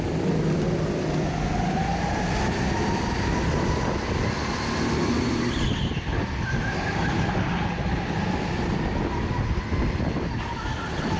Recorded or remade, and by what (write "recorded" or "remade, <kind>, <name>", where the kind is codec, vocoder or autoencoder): recorded